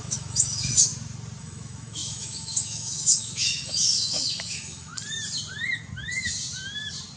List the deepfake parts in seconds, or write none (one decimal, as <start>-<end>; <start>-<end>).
0.0-0.9; 1.4-4.9